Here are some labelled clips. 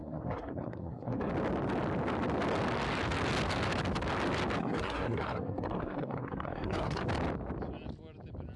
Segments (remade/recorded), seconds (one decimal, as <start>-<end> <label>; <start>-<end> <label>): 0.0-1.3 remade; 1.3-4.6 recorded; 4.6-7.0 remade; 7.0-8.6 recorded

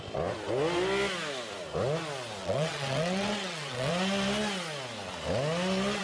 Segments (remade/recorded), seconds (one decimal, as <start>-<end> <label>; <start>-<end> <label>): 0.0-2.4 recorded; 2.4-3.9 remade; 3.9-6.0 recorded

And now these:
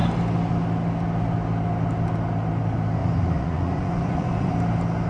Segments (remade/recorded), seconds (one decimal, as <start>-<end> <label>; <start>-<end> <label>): 0.0-3.0 recorded; 3.0-4.5 remade; 4.5-5.1 recorded

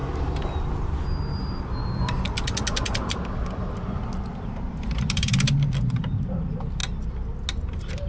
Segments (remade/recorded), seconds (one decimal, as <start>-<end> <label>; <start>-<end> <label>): 0.0-4.3 recorded; 4.3-5.3 remade; 5.3-8.1 recorded

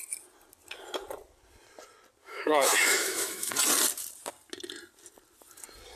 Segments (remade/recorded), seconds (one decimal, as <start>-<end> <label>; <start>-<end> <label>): 0.0-2.2 recorded; 2.2-3.5 remade; 3.5-6.0 recorded

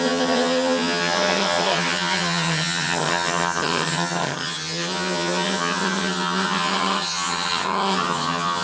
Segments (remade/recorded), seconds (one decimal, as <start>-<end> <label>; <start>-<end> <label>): 0.0-8.6 remade